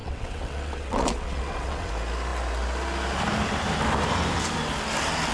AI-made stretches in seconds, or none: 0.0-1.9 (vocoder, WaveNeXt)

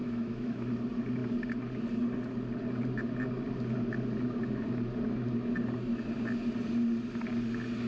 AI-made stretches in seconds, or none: 0.0-0.7 (autoencoder, DAC-VAE)

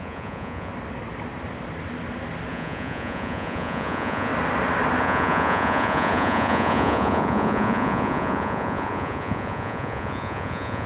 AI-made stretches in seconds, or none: 0.0-0.7 (vocoder, Vocos); 2.5-4.3; 5.0-10.9

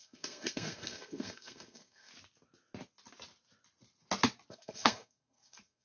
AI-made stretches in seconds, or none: 0.0-2.1 (codec, SNAC); 4.5-5.8

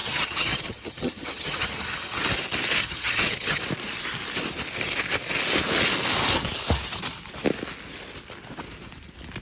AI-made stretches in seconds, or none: 0.0-2.2 (vocoder, HiFi-GAN); 2.8-3.6

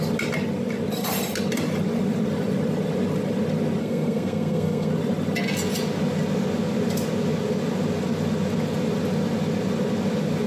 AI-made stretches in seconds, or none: 3.8-4.9 (codec, SNAC)

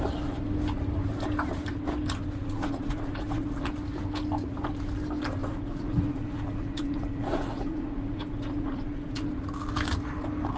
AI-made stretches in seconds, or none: 2.4-3.6 (vocoder, Vocos); 5.4-9.3

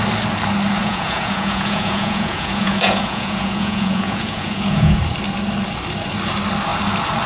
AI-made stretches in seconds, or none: 0.8-5.0 (vocoder, Vocos)